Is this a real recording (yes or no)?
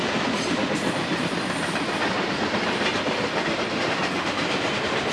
yes